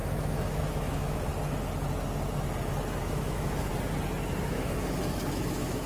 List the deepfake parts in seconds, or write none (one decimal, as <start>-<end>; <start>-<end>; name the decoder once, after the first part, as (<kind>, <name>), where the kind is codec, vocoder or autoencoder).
0.0-1.3 (autoencoder, DAC-VAE); 3.0-3.7; 4.4-5.9